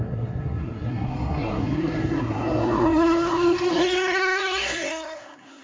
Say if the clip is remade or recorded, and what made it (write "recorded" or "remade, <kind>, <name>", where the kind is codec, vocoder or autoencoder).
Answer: remade, codec, SNAC